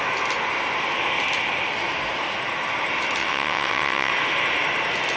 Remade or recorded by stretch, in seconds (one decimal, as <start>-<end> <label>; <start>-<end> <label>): 0.0-3.2 recorded; 3.2-4.1 remade; 4.1-5.2 recorded